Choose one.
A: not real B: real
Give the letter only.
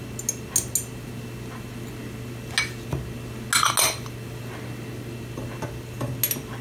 B